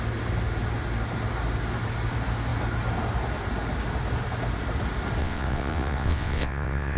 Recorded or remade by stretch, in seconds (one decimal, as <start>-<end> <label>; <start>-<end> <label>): 0.0-5.2 recorded; 5.2-7.0 remade